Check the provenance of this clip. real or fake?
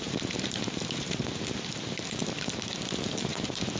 fake